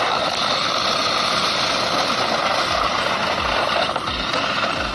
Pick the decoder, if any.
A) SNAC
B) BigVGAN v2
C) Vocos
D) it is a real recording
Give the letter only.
D